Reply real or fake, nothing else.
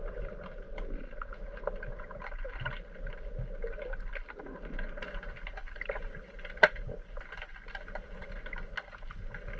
real